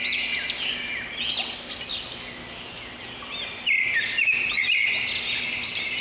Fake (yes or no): no